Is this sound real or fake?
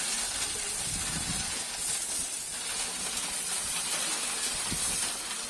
real